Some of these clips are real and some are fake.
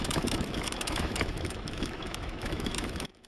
fake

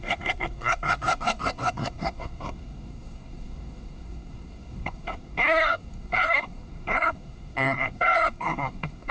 fake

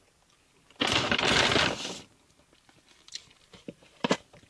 real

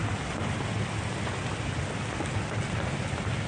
real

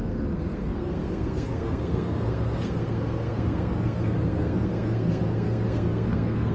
fake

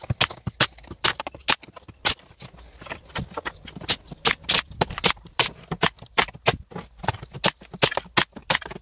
real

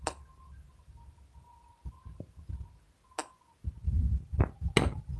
real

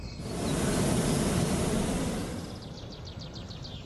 real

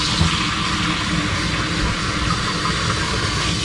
real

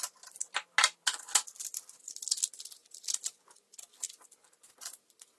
real